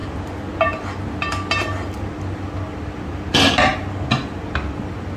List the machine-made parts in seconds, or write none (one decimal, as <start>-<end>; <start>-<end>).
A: none

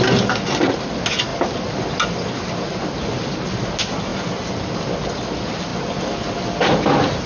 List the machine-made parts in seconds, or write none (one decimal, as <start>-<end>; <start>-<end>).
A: none

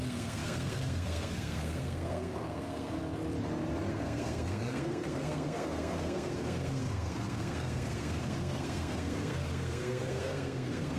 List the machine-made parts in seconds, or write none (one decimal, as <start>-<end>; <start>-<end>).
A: 0.0-3.0; 3.9-11.0

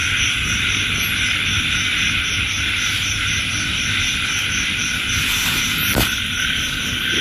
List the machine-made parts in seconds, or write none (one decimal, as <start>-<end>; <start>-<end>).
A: none

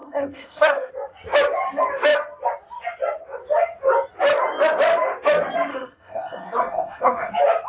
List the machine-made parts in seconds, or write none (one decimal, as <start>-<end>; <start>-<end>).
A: 0.0-0.9; 5.7-7.3